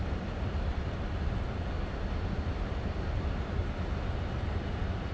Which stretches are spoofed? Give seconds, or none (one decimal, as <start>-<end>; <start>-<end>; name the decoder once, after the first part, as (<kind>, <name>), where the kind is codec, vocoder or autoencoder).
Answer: 0.0-3.6 (vocoder, BigVGAN v2); 4.6-5.1